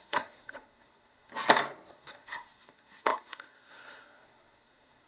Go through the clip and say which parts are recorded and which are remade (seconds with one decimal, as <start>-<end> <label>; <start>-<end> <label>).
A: 0.0-1.3 remade; 1.3-1.9 recorded; 1.9-5.1 remade